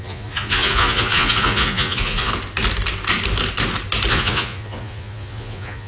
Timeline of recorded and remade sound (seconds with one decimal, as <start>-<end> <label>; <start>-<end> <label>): 0.0-2.3 remade; 2.3-4.1 recorded; 4.1-5.9 remade